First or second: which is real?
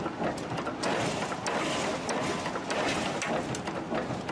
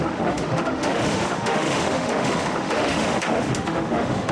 first